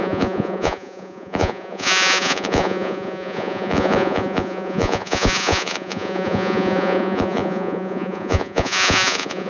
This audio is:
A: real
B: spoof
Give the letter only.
B